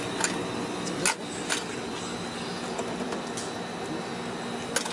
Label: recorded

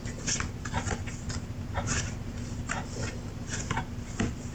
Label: recorded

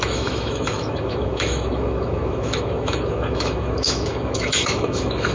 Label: remade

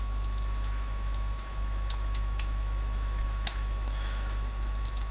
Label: remade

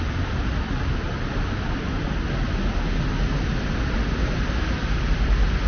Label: recorded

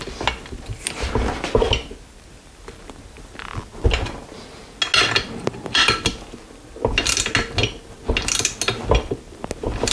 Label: recorded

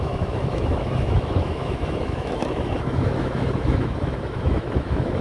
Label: remade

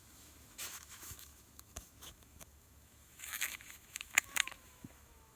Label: remade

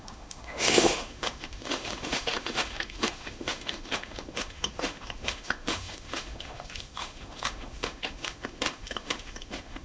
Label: remade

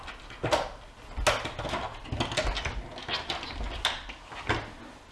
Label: recorded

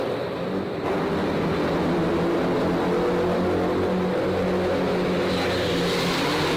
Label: recorded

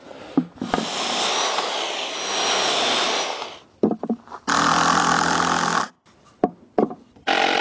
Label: recorded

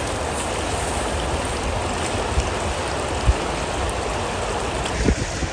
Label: recorded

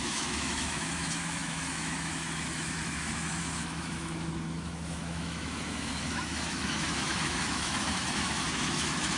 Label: remade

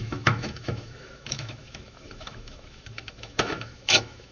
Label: remade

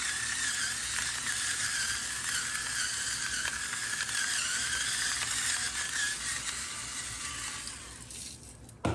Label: recorded